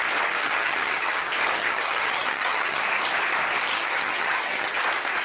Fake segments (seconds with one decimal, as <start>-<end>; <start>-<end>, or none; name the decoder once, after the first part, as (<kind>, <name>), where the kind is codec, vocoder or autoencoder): 0.4-1.2 (vocoder, HiFi-GAN); 1.6-2.8; 3.7-4.7